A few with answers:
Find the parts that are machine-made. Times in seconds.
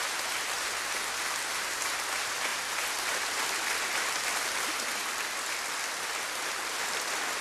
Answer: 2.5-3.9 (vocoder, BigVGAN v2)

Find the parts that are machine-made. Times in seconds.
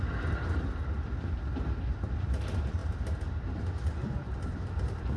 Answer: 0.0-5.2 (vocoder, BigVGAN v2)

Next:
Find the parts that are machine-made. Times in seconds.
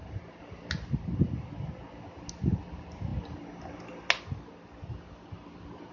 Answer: none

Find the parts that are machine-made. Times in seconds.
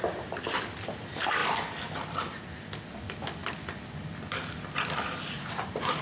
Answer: 0.0-1.4 (vocoder, BigVGAN v2); 2.9-3.4; 4.6-6.0